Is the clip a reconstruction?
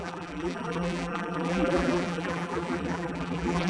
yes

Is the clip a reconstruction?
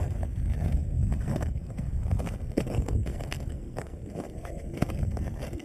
yes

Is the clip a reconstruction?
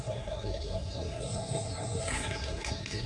yes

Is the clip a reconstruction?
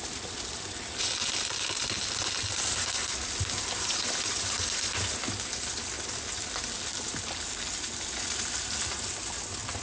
no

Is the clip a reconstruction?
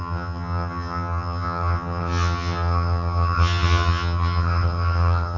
yes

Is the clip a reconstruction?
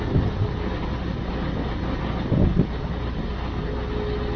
no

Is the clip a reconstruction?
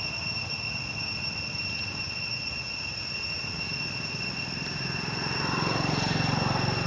no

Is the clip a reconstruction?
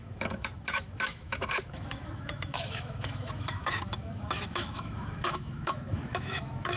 yes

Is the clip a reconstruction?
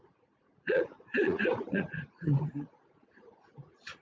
yes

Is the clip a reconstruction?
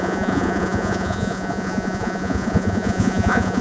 yes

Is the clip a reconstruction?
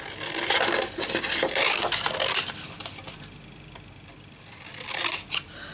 no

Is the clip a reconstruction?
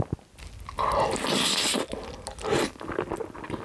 no